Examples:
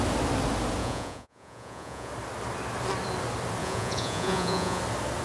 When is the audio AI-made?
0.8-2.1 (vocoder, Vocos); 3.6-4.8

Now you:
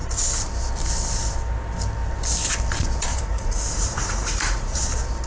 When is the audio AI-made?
3.1-4.8 (vocoder, Vocos)

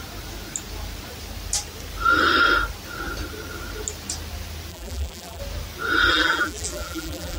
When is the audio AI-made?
4.7-5.4 (vocoder, BigVGAN v2); 6.1-7.4

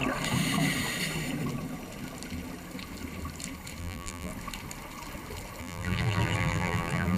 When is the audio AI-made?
3.8-4.3 (vocoder, BigVGAN v2); 5.6-7.2